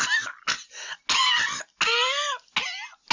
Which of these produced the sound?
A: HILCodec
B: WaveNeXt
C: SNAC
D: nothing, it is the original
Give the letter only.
D